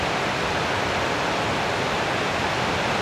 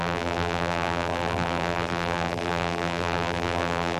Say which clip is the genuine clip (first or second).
first